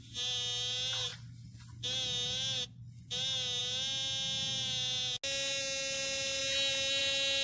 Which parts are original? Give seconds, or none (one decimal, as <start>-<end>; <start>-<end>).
0.0-7.4